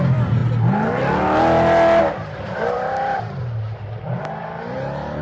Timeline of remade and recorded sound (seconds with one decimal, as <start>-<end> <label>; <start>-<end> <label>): 0.0-0.4 remade; 0.4-2.0 recorded; 2.0-5.2 remade